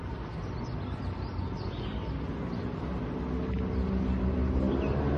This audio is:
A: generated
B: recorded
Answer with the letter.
B